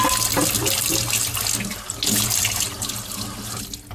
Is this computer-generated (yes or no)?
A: no